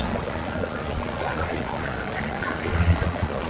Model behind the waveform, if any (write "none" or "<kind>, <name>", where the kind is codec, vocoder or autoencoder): vocoder, Vocos